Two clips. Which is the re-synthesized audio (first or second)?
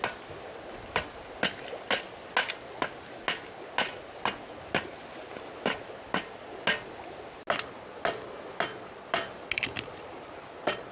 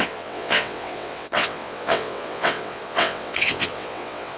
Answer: second